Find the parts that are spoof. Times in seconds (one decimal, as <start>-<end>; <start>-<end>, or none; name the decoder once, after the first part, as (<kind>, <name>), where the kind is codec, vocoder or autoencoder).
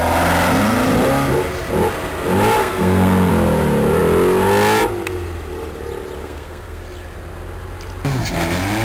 2.6-3.3 (codec, SNAC); 6.2-6.8